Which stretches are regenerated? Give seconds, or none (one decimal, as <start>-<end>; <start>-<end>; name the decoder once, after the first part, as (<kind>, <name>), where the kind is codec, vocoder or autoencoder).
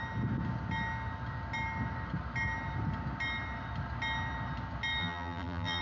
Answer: 5.0-5.8 (vocoder, BigVGAN v2)